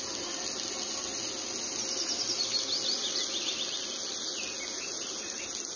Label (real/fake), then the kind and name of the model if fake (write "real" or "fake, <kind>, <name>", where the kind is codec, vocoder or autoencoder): real